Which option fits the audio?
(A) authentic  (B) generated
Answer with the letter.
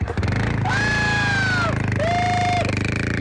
A